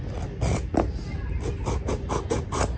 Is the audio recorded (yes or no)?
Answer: yes